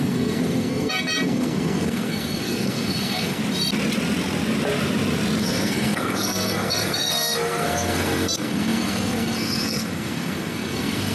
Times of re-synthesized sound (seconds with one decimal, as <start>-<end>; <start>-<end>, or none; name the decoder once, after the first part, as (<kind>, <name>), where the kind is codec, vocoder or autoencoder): 0.0-3.4 (codec, SNAC); 5.4-11.1